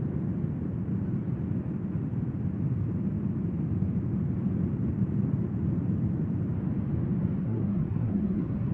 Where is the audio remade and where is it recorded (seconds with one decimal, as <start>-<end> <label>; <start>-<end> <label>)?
0.0-7.4 recorded; 7.4-8.7 remade